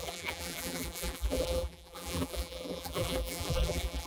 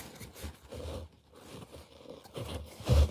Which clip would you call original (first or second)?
second